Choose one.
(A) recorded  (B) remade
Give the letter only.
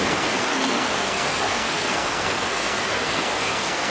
B